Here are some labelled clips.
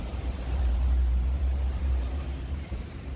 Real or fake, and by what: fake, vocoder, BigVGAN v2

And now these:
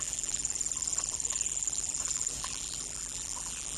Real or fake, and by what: fake, vocoder, BigVGAN v2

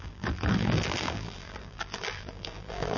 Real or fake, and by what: fake, vocoder, BigVGAN v2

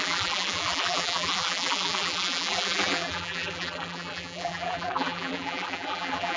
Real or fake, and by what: fake, vocoder, BigVGAN v2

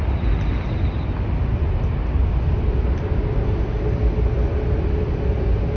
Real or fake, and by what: real